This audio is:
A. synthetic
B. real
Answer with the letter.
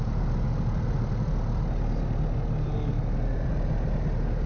B